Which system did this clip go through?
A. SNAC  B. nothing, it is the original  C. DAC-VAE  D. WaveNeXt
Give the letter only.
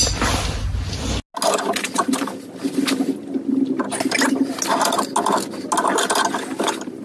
B